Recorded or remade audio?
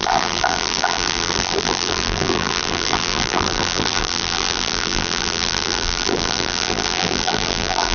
remade